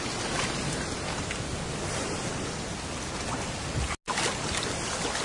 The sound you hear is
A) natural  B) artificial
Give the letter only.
A